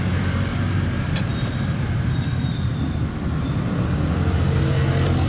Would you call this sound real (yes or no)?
yes